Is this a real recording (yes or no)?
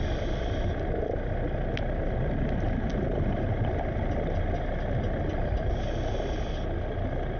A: yes